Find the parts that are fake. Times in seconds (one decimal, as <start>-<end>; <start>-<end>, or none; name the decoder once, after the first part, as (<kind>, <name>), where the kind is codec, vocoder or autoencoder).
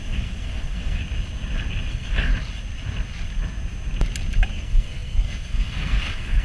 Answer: 0.0-1.0 (codec, SNAC); 1.9-2.3; 4.5-6.4